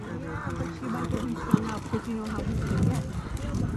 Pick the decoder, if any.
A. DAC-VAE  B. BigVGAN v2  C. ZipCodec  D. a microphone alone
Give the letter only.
D